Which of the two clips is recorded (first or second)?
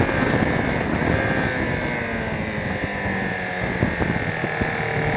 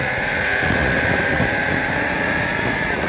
first